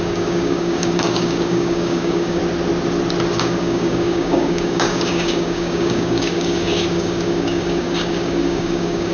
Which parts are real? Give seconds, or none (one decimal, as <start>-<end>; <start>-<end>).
2.4-3.4